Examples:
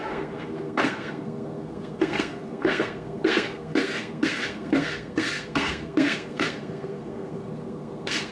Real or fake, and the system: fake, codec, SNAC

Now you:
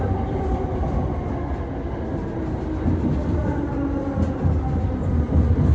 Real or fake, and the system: real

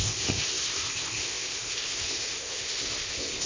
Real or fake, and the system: fake, codec, ZipCodec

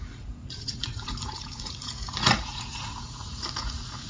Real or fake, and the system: fake, vocoder, Vocos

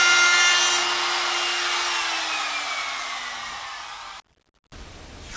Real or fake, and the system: real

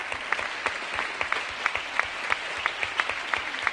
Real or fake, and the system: real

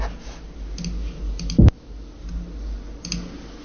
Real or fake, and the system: real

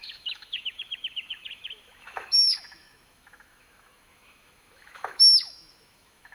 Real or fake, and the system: fake, autoencoder, DAC-VAE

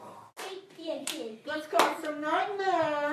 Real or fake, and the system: real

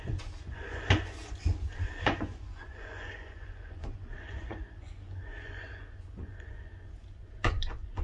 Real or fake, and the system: fake, vocoder, Vocos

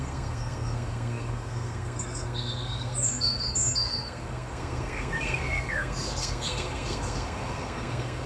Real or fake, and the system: fake, codec, SNAC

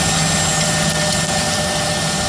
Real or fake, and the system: real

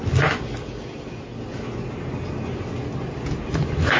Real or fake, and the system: real